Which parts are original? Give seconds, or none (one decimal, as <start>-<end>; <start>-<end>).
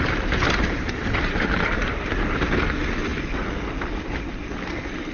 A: 0.0-5.1